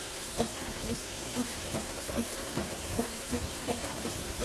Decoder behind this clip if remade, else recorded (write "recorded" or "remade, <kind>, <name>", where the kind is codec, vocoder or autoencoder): remade, codec, SNAC